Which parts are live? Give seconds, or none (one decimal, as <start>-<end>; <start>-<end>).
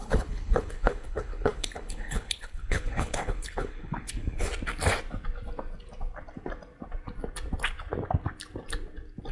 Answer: 4.5-9.3